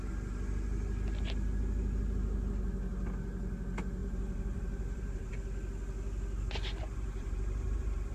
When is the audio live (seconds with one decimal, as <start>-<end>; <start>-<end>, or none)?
0.0-4.0; 5.3-6.8